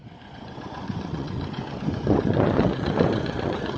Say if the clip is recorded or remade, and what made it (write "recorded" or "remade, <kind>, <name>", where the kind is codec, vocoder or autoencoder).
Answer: remade, vocoder, Vocos